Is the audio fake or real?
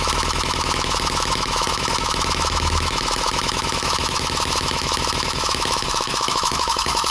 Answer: fake